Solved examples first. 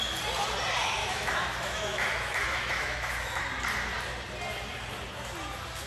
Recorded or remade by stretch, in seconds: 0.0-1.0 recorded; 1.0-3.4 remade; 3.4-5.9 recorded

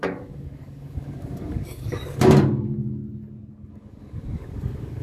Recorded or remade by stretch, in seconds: 0.0-3.0 remade; 3.0-3.7 recorded; 3.7-5.0 remade

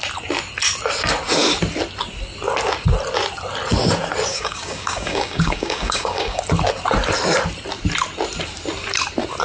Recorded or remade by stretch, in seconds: 0.0-4.3 recorded; 4.3-6.4 remade; 6.4-9.4 recorded

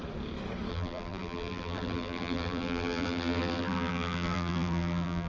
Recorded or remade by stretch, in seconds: 0.0-0.7 recorded; 0.7-5.3 remade